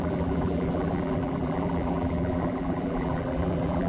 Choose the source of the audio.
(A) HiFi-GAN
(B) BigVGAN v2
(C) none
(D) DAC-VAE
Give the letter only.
B